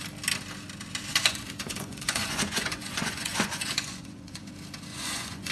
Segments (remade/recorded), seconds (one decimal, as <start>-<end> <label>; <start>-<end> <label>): 0.0-1.1 recorded; 1.1-4.4 remade; 4.4-4.9 recorded; 4.9-5.5 remade